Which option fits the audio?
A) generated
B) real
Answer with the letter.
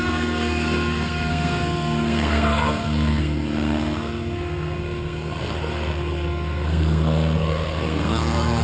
A